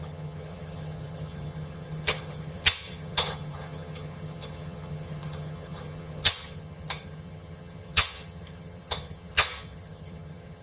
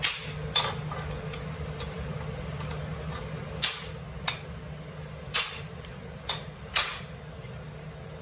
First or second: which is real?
second